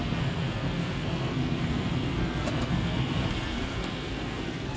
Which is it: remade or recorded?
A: remade